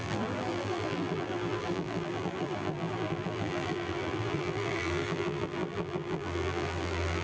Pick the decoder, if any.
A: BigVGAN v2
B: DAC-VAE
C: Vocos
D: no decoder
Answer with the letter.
A